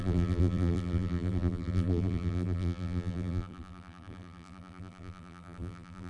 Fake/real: fake